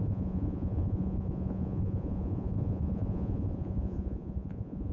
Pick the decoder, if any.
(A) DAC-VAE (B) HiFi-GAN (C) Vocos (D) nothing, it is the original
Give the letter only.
C